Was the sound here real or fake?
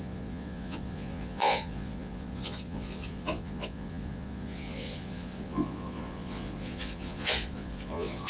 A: fake